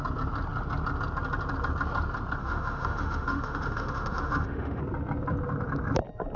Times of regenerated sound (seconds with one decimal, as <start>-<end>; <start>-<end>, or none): 2.4-4.8